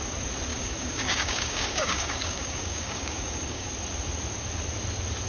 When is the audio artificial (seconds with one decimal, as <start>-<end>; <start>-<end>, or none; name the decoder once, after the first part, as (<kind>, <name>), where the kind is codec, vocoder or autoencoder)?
0.5-3.7 (codec, DAC)